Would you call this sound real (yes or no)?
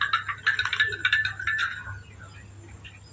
yes